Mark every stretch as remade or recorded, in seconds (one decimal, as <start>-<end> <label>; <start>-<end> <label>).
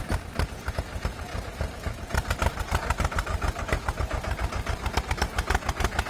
0.0-6.1 recorded